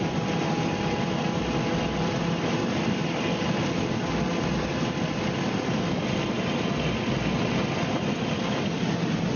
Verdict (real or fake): real